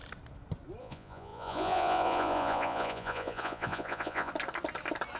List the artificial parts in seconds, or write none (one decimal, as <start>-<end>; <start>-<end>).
0.8-4.3